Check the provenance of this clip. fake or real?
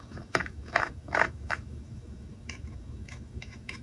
fake